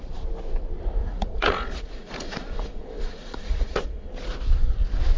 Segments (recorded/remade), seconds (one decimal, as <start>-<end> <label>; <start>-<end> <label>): 0.0-1.0 recorded; 1.0-4.1 remade; 4.1-5.2 recorded